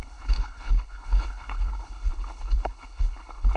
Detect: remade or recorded remade